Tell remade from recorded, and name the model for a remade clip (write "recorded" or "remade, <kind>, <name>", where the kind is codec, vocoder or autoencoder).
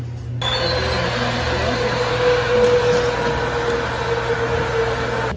recorded